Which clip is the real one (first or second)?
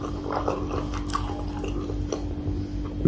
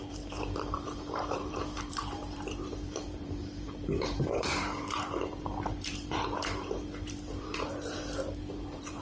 first